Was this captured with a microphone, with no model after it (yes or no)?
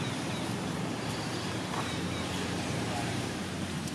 no